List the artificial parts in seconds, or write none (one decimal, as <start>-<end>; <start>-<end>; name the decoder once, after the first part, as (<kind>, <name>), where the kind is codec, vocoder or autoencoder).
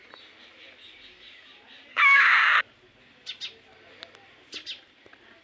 1.9-2.6 (codec, DAC)